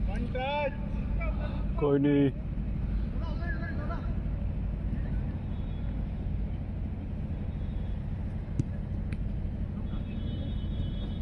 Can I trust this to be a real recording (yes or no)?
yes